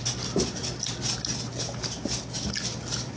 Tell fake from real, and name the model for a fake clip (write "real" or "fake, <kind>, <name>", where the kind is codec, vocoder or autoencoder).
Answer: real